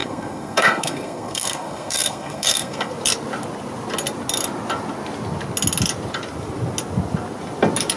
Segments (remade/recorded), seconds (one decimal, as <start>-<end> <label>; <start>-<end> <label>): 0.0-2.9 remade; 2.9-8.0 recorded